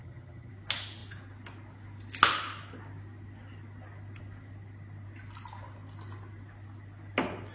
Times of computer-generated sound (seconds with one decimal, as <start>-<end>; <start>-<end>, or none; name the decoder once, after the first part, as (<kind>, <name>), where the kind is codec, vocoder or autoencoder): 0.0-0.5 (vocoder, HiFi-GAN)